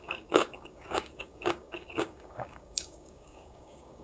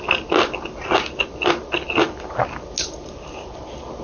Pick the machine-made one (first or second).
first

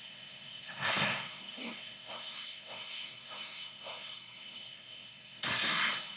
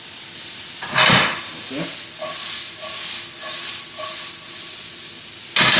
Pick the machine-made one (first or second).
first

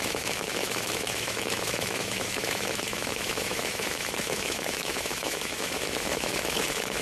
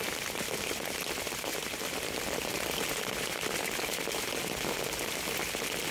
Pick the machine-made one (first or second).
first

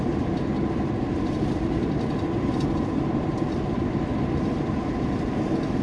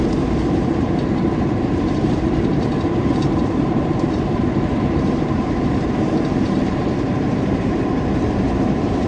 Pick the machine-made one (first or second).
second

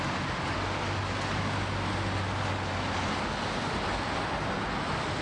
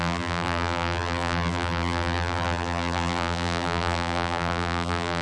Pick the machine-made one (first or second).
second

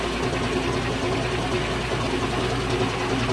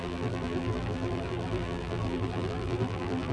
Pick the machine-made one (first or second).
second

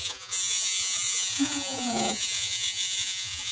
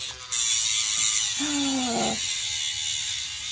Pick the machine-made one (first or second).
first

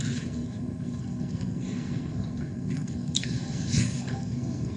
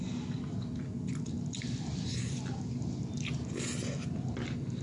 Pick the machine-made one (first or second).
first